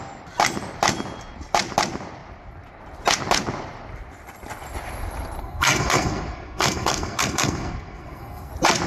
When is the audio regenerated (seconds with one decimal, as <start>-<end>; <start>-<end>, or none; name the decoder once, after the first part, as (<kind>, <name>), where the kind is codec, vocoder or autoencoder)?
5.4-8.5 (codec, SNAC)